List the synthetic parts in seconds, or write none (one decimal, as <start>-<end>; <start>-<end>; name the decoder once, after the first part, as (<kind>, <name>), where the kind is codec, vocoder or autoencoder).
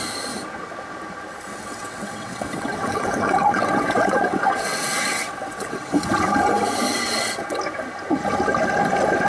1.5-6.1 (vocoder, WaveNeXt); 6.9-7.6